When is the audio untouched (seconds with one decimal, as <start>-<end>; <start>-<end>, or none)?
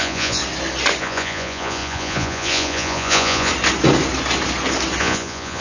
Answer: 0.4-1.0; 3.5-5.0